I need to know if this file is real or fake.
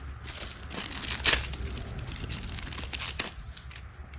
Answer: real